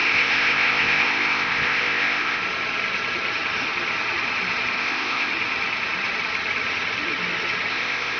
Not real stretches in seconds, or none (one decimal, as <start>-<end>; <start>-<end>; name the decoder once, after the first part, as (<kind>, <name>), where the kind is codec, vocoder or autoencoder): 0.0-2.4 (codec, ZipCodec); 4.8-5.3; 7.7-8.2